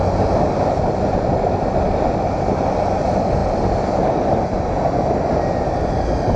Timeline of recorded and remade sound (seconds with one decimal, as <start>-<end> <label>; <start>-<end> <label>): 0.0-6.4 recorded